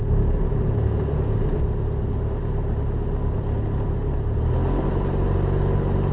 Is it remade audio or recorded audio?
recorded